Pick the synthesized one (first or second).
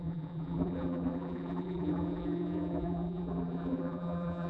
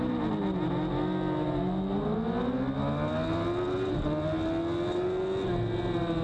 first